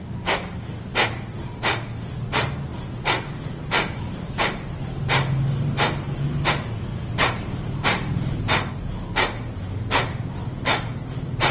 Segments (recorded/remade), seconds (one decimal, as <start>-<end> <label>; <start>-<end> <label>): 0.0-2.7 recorded; 2.7-6.5 remade; 6.5-6.9 recorded; 6.9-8.7 remade; 8.7-11.5 recorded